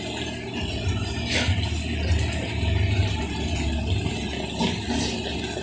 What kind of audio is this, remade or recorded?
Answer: recorded